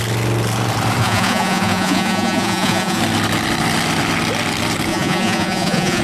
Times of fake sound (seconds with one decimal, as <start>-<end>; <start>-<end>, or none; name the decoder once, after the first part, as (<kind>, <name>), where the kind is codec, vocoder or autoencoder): 1.0-3.0 (vocoder, Vocos); 4.9-6.0